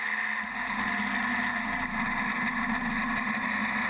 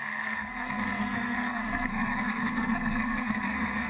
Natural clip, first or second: first